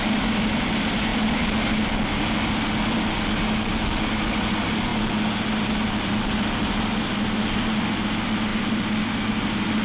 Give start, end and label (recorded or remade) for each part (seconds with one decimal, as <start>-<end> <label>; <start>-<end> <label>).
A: 0.0-9.8 recorded